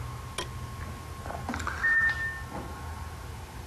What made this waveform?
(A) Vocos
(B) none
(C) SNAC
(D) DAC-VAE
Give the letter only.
B